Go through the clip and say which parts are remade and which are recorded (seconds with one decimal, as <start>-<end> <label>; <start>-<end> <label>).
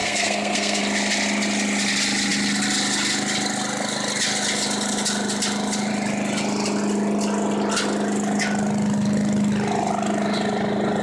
0.0-0.8 remade; 0.8-11.0 recorded